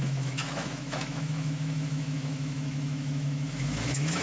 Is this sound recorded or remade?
remade